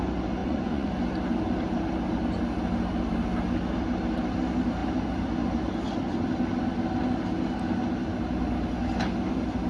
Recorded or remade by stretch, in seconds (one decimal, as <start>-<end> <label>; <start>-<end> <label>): 0.0-0.4 recorded; 0.4-0.9 remade; 0.9-9.7 recorded